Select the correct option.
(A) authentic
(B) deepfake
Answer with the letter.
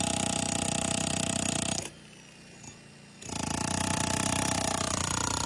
A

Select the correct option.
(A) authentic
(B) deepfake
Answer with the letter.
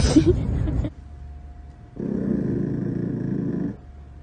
A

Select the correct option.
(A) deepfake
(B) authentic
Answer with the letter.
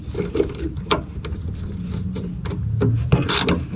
B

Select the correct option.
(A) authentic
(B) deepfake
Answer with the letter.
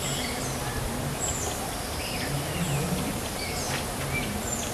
A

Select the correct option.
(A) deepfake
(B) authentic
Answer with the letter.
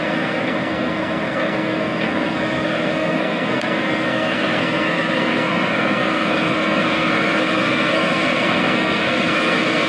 A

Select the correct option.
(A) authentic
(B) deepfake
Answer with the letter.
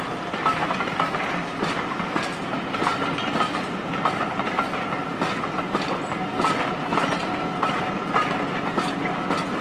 A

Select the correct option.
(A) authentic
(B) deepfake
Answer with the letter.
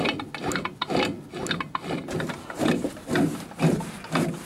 A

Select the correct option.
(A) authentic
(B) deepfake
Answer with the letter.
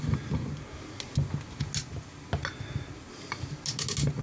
A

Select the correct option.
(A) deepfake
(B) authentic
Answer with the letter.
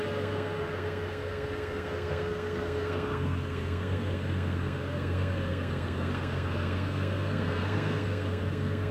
A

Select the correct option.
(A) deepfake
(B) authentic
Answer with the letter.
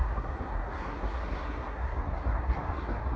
A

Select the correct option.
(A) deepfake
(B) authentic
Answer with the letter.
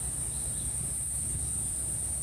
B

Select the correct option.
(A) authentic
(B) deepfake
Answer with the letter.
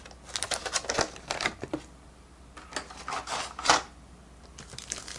A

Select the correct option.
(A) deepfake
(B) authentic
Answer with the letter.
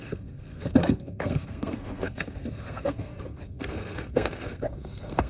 A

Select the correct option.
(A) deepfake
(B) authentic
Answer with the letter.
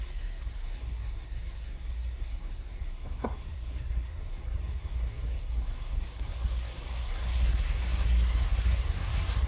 A